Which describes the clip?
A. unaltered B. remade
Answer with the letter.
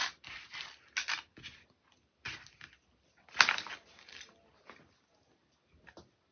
A